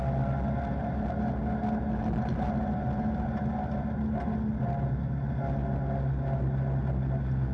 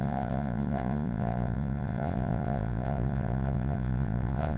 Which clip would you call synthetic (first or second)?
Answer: second